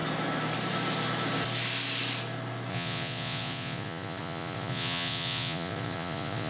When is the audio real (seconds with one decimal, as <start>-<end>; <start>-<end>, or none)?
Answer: 0.0-2.7